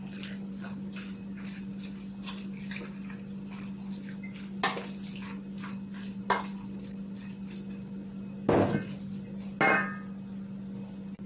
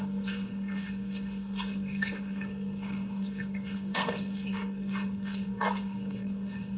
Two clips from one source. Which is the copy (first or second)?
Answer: second